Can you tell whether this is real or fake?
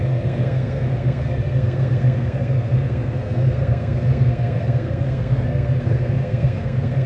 fake